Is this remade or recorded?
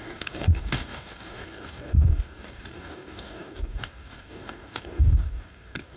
remade